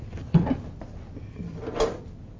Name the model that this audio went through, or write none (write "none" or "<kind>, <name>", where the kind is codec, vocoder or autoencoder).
none